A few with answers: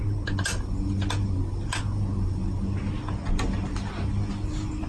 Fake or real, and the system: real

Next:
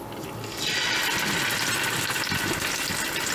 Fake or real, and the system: real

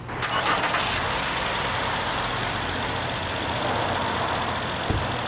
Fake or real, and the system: real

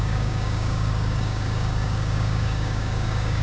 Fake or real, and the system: fake, codec, DAC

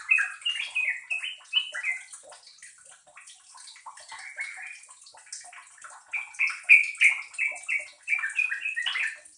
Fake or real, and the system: real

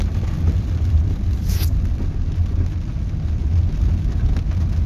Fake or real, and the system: real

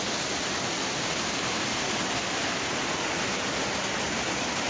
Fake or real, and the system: real